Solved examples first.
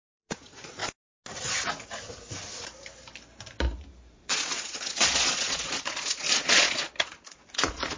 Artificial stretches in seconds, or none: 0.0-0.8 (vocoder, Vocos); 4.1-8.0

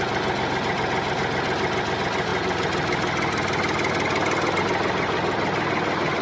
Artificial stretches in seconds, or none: none

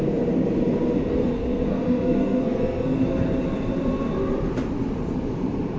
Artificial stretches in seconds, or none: 1.1-3.0 (codec, SNAC)